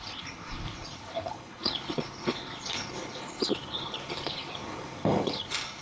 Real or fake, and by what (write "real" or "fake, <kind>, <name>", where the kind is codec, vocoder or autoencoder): fake, codec, HILCodec